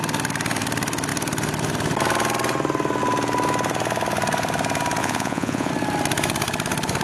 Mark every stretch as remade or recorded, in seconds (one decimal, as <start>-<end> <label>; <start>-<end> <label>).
0.0-5.0 recorded; 5.0-5.7 remade; 5.7-7.0 recorded